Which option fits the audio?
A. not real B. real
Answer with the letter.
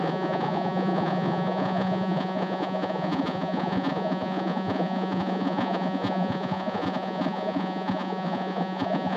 A